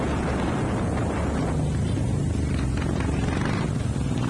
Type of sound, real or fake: real